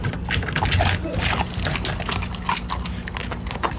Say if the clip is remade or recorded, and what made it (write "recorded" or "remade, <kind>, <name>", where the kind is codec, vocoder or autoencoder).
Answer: recorded